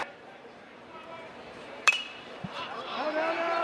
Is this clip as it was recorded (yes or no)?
no